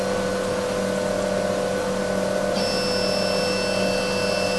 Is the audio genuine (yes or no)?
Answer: yes